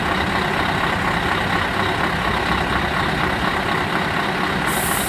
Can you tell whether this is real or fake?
real